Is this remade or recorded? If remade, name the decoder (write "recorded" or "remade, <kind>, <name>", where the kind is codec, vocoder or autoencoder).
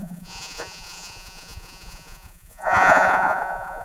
remade, vocoder, Vocos